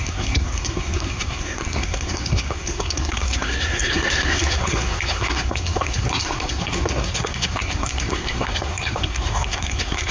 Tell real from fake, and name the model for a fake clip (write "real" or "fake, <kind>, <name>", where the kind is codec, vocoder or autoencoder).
fake, codec, SNAC